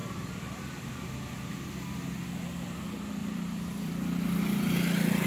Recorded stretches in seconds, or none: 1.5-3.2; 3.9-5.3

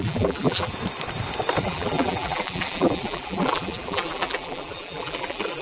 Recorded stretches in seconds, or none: 0.7-1.6

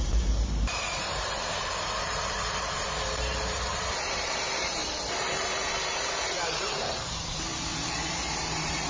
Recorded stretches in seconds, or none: 7.5-8.1